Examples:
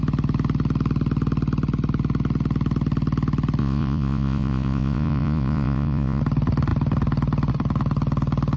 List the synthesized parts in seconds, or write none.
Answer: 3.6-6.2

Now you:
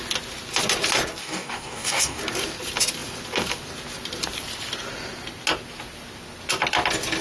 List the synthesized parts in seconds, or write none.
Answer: 1.2-2.2

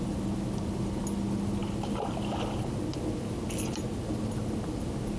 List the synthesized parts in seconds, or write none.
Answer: none

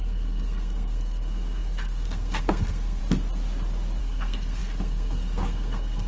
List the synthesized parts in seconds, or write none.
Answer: 0.0-3.0; 4.0-6.1